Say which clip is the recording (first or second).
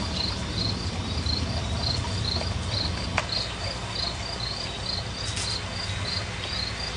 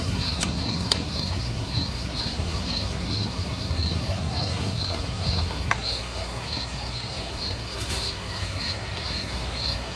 first